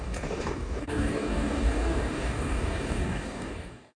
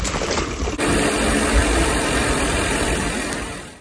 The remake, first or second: first